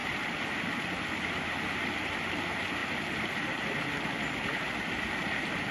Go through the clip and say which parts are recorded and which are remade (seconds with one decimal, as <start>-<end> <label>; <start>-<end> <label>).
0.0-1.6 remade; 1.6-2.8 recorded; 2.8-4.1 remade; 4.1-5.7 recorded

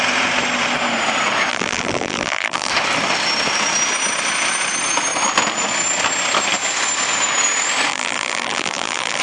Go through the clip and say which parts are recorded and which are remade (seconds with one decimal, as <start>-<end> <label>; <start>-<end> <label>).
0.0-1.5 recorded; 1.5-2.7 remade; 2.7-7.9 recorded; 7.9-9.2 remade

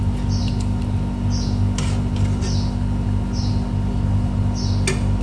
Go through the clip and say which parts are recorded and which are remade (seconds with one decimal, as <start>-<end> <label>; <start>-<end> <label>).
0.0-5.2 recorded

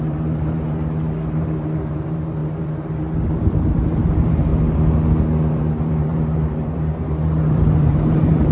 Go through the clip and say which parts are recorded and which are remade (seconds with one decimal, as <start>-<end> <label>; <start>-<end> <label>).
0.0-4.5 remade; 4.5-5.5 recorded; 5.5-8.5 remade

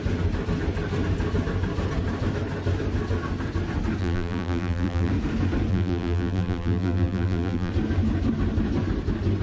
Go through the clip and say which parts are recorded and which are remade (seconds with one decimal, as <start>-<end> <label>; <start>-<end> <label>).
0.0-4.0 recorded; 4.0-5.1 remade; 5.1-5.7 recorded; 5.7-7.7 remade; 7.7-9.4 recorded